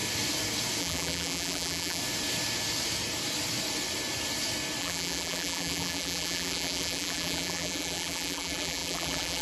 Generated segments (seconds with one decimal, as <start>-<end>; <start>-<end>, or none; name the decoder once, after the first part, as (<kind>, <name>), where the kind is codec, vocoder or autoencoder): 0.8-2.0 (vocoder, BigVGAN v2); 4.8-9.4